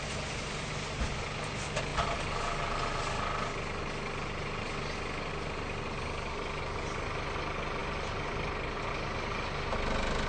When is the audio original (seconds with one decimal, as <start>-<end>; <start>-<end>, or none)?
0.0-10.3